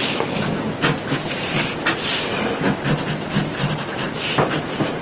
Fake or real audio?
real